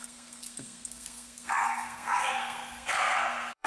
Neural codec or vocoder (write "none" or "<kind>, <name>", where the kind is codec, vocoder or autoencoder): codec, SNAC